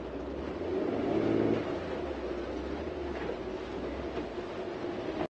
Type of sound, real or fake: real